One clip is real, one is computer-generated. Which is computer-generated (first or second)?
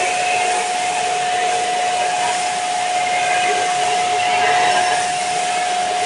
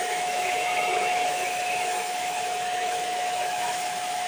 second